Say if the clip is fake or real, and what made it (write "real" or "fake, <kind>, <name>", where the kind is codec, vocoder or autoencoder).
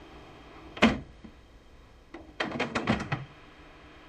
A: fake, autoencoder, DAC-VAE